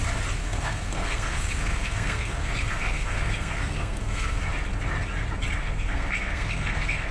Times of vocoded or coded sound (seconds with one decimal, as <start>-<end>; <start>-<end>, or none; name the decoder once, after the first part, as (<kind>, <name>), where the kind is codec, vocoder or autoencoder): 0.4-4.4 (codec, SNAC); 5.6-7.1